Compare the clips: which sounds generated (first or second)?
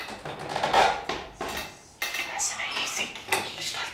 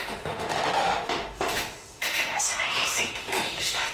second